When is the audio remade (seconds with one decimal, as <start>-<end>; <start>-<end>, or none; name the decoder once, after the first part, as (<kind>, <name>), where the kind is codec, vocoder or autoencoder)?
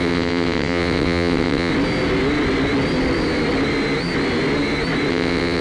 0.0-1.7 (vocoder, WaveNeXt); 5.1-5.6